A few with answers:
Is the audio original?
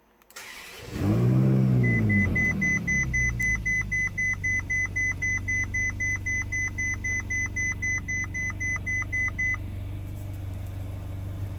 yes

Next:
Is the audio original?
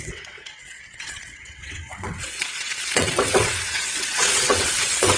no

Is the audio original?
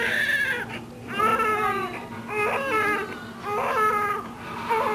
yes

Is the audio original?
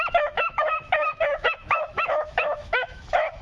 no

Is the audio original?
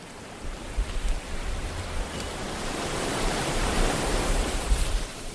no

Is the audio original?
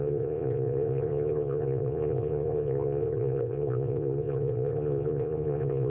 no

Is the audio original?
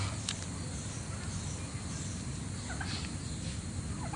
yes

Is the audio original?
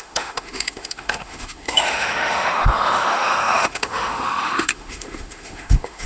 no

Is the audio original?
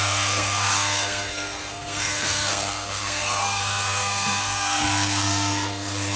no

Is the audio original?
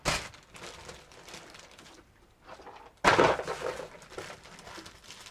yes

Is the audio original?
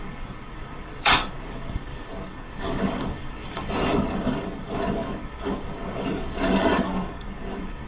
no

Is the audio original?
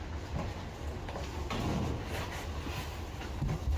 yes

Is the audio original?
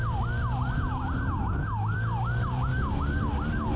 yes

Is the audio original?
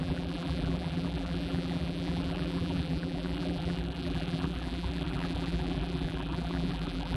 no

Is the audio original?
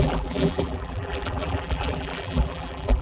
no